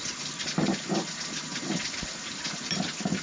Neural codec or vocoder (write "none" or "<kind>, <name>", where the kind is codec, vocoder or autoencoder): vocoder, BigVGAN v2